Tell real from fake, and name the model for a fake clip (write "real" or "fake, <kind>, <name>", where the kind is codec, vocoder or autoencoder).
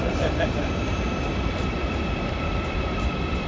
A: fake, vocoder, BigVGAN v2